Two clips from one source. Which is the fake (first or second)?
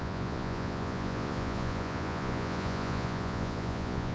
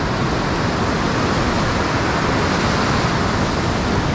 first